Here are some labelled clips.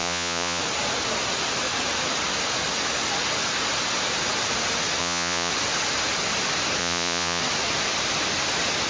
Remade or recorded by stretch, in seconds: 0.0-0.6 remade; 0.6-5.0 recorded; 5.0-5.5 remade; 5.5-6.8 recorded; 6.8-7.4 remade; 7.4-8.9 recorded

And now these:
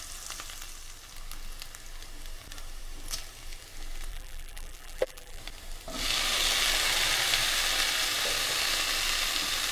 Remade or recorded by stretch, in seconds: 0.0-4.1 recorded; 4.1-5.4 remade; 5.4-9.7 recorded

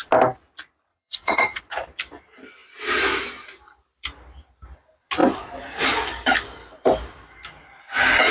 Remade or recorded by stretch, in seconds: 0.0-0.9 recorded; 0.9-1.6 remade; 1.6-8.3 recorded